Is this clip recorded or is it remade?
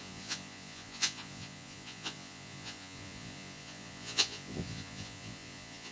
remade